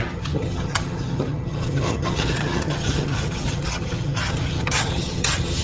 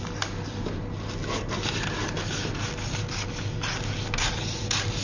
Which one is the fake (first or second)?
first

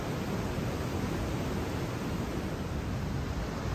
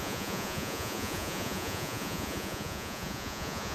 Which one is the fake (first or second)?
second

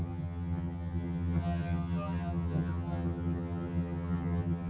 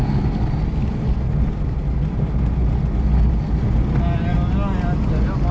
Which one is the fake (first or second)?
first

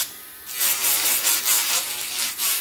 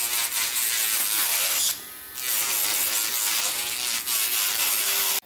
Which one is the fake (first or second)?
first